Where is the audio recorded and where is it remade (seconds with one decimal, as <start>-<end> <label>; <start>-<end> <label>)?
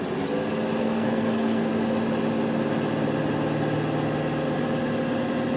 0.0-0.8 recorded; 0.8-1.7 remade; 1.7-5.6 recorded